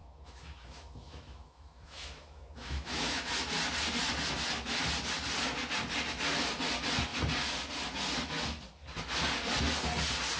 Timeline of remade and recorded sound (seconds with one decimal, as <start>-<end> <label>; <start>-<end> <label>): 0.0-3.3 remade; 3.3-10.4 recorded